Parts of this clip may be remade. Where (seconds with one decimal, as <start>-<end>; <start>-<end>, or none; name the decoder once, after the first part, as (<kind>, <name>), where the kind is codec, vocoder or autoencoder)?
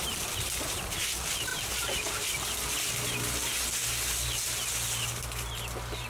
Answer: none